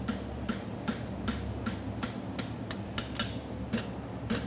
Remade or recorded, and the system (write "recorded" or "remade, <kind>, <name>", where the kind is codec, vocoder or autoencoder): recorded